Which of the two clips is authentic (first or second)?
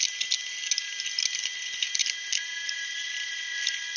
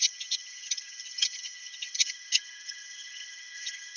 first